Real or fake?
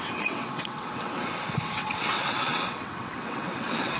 fake